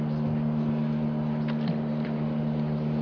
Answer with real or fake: real